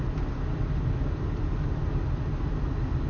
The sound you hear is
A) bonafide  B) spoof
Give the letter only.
A